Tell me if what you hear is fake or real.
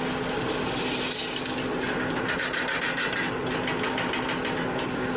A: real